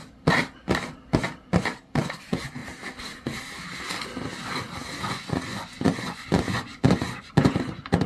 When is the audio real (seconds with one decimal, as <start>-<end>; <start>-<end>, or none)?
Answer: 0.0-2.0; 2.6-5.1